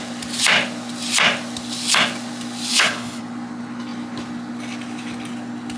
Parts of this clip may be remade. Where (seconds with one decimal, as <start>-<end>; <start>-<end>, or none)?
2.7-3.2